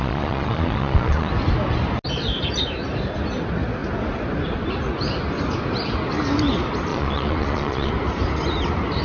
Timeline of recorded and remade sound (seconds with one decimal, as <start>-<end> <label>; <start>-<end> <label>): 0.0-1.3 remade; 1.3-6.9 recorded; 6.9-7.9 remade; 7.9-9.0 recorded